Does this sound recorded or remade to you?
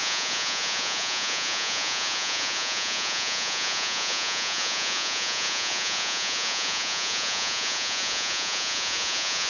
remade